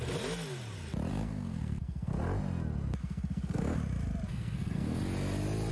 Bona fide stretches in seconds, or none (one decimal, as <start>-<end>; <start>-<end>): 0.0-1.1; 2.1-3.0; 3.8-4.3; 5.0-5.7